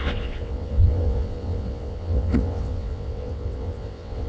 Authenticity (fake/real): fake